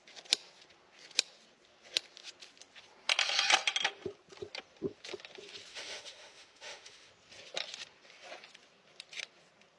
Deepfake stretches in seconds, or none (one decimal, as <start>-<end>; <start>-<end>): 5.7-7.1

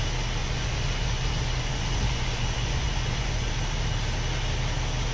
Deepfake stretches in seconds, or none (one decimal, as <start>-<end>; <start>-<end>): 0.4-3.5

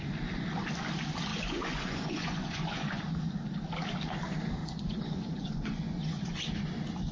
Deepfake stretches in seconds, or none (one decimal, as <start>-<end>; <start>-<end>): 1.3-3.0; 4.6-6.4

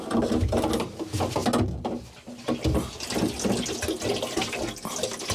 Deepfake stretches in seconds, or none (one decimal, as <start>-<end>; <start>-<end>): none

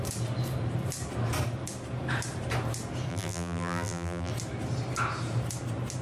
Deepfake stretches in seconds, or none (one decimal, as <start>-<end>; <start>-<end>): 3.1-4.3